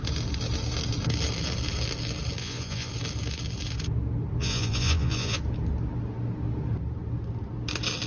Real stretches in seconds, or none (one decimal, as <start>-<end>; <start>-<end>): 0.0-2.4; 2.9-4.4; 5.4-8.1